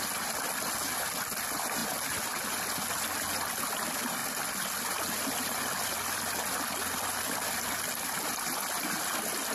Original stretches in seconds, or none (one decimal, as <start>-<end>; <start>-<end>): 0.0-9.5